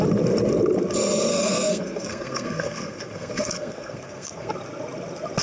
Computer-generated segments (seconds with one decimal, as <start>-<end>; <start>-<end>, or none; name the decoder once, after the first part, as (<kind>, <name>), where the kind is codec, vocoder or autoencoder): 1.3-4.5 (codec, SNAC)